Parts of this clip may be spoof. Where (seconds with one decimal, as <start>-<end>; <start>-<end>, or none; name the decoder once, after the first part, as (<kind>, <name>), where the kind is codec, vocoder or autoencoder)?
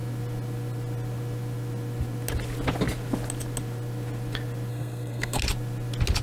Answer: 4.7-5.4 (codec, SNAC)